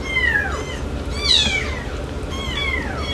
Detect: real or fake real